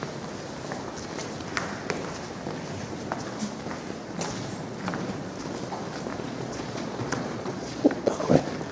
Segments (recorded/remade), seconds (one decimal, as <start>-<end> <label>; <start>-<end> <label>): 0.0-6.1 recorded; 6.1-8.1 remade; 8.1-8.7 recorded

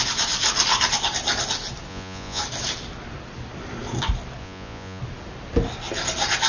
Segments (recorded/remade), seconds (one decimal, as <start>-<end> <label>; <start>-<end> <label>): 0.0-1.9 recorded; 1.9-2.4 remade; 2.4-4.4 recorded; 4.4-5.0 remade; 5.0-6.5 recorded

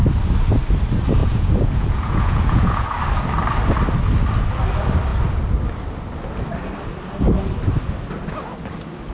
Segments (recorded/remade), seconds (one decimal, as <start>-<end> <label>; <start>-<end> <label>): 0.0-1.2 recorded; 1.2-3.0 remade; 3.0-9.1 recorded